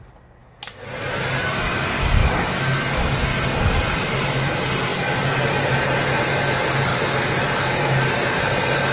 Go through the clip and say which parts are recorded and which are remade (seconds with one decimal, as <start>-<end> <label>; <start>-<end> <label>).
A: 0.0-0.4 recorded; 0.4-0.9 remade; 0.9-2.2 recorded; 2.2-3.0 remade; 3.0-6.9 recorded; 6.9-8.0 remade; 8.0-8.9 recorded